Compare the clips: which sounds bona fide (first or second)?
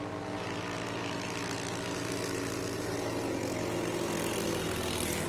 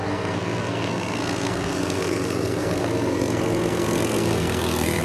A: first